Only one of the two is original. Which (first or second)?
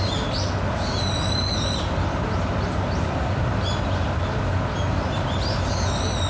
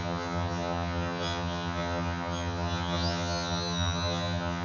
first